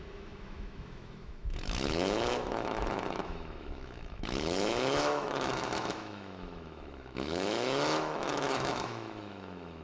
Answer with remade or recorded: remade